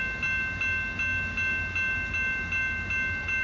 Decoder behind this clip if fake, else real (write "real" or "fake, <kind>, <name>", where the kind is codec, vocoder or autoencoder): real